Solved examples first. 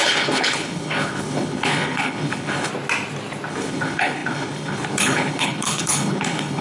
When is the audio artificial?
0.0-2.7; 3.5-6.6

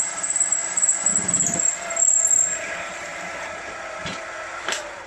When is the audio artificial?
0.0-1.1; 2.4-5.1

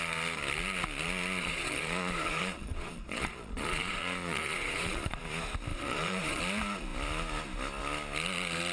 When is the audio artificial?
1.4-5.2; 5.7-6.4